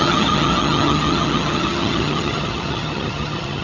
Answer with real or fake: fake